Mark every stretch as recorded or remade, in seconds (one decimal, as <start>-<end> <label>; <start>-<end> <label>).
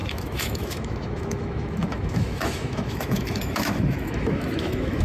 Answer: 0.0-5.0 remade